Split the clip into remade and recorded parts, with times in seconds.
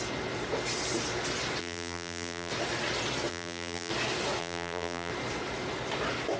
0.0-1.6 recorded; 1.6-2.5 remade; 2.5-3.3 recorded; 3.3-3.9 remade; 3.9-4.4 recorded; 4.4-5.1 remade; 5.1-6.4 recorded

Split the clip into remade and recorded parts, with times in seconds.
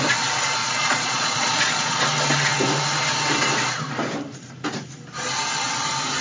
0.0-0.6 recorded; 0.6-2.0 remade; 2.0-6.2 recorded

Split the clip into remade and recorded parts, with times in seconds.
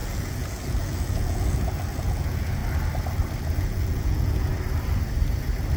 0.0-2.6 remade; 2.6-3.6 recorded; 3.6-4.5 remade; 4.5-5.8 recorded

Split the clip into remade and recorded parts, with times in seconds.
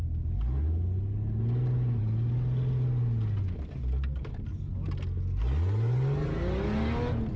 0.0-7.4 recorded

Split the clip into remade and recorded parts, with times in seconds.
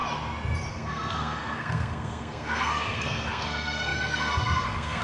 0.0-0.7 recorded; 0.7-5.0 remade